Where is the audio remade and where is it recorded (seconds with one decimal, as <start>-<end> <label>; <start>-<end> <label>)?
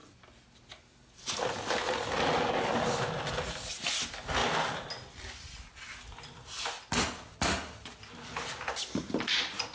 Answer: 0.0-9.7 recorded